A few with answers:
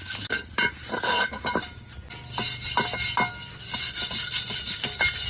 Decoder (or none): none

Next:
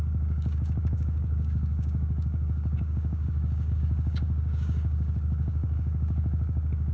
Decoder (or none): codec, DAC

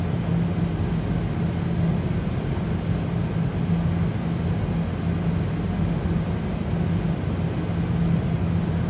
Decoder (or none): none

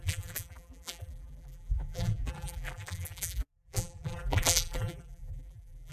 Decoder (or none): vocoder, BigVGAN v2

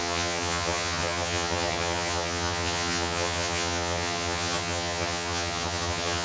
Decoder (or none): vocoder, HiFi-GAN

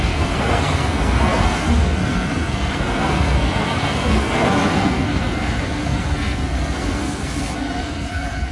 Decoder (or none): codec, SNAC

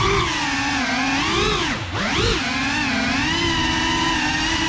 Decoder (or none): none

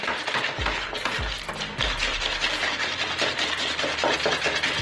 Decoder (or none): none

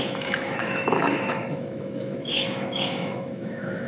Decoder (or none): autoencoder, DAC-VAE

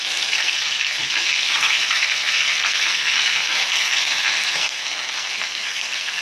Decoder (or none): codec, SNAC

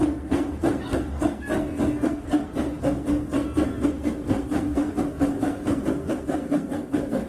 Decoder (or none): codec, SNAC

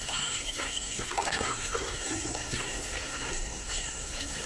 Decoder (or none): codec, SNAC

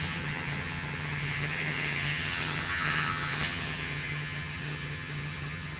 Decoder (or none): vocoder, HiFi-GAN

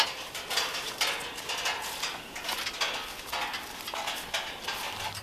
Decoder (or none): none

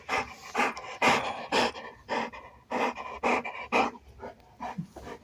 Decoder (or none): none